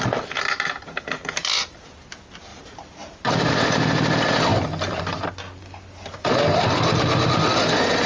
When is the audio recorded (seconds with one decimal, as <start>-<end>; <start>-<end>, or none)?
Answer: 0.0-2.5; 3.5-4.5; 5.0-8.1